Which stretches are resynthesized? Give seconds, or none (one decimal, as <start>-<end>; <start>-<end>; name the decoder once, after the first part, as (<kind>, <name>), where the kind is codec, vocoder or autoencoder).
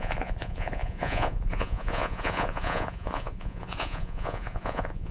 0.0-5.1 (vocoder, Vocos)